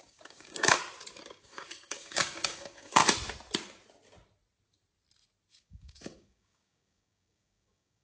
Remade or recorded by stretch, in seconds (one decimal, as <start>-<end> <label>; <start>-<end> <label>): 0.0-0.8 remade; 0.8-1.3 recorded; 1.3-3.0 remade; 3.0-5.5 recorded; 5.5-8.0 remade